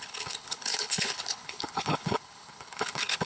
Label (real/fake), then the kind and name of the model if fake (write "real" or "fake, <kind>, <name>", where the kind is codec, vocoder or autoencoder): fake, codec, HILCodec